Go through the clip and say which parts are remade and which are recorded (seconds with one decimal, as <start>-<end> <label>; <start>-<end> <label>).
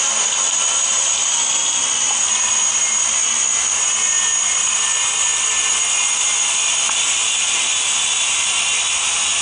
0.0-9.4 recorded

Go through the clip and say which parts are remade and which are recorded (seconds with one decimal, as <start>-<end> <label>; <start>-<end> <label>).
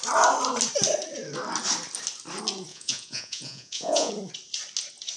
0.0-2.7 recorded; 2.7-4.1 remade; 4.1-5.2 recorded